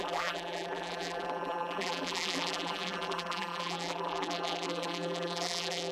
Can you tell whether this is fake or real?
fake